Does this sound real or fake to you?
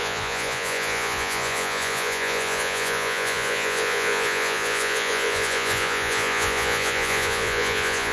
fake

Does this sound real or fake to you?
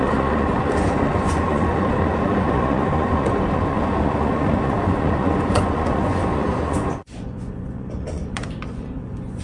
fake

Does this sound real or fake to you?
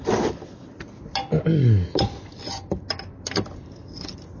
real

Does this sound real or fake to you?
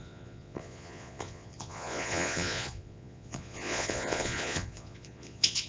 fake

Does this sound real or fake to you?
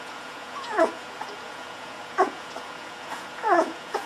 fake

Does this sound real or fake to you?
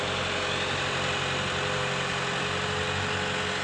real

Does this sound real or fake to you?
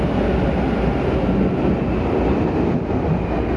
real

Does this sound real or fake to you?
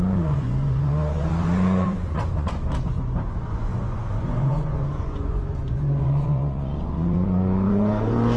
fake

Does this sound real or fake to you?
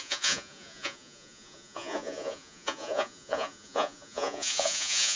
fake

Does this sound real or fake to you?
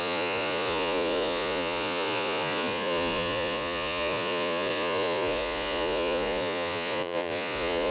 fake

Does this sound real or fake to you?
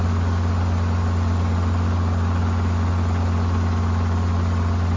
real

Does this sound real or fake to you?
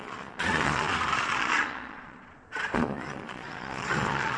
fake